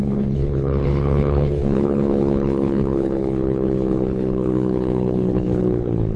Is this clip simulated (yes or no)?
yes